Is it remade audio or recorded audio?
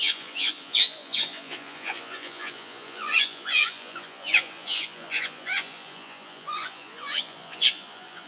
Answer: remade